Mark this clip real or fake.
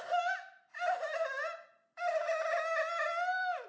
real